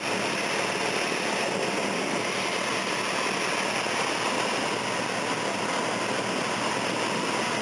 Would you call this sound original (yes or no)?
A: yes